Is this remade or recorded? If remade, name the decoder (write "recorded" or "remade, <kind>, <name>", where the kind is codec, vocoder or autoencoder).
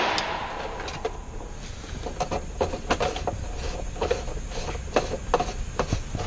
recorded